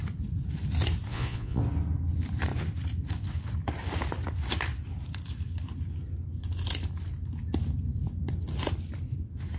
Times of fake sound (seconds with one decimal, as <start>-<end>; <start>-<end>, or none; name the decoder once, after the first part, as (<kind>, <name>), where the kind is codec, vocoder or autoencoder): 1.1-1.6 (vocoder, Vocos)